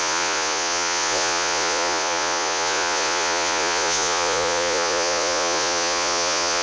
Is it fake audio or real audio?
fake